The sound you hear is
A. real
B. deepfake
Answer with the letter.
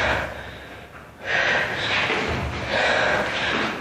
A